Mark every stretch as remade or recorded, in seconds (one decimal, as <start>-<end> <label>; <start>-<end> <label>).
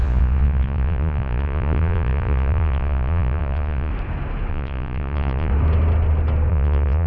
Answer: 0.0-3.9 remade; 3.9-4.5 recorded; 4.5-5.5 remade; 5.5-6.5 recorded; 6.5-7.1 remade